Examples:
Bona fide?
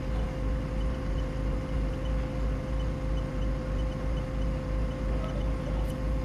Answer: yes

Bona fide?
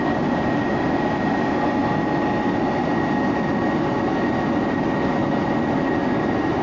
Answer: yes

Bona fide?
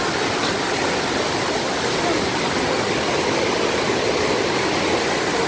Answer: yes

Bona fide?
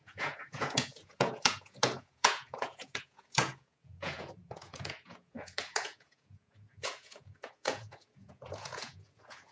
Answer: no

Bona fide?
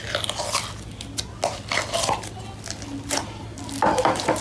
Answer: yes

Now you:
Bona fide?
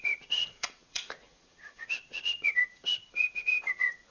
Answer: no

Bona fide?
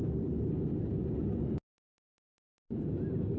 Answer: yes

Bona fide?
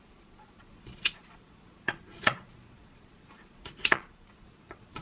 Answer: no